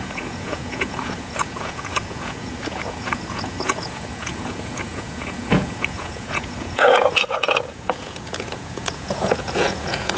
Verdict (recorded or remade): remade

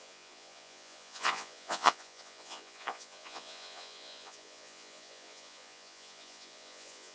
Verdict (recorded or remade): remade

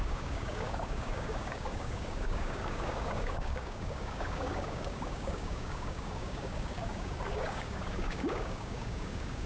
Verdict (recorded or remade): remade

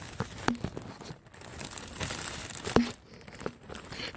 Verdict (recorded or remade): recorded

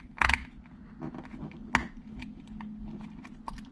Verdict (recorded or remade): recorded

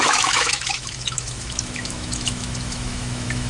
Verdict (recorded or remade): remade